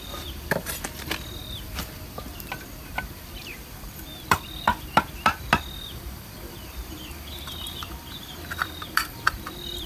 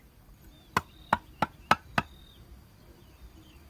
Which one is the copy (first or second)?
first